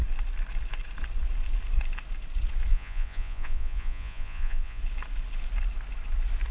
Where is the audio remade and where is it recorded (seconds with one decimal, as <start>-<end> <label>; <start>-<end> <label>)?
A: 0.0-2.7 recorded; 2.7-4.8 remade; 4.8-6.5 recorded